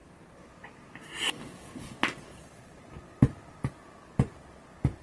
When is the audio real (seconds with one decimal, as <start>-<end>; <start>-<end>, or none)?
0.0-5.0